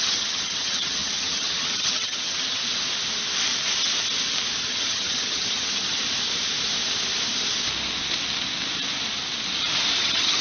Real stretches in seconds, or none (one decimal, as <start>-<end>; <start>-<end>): 2.6-4.6; 6.0-10.0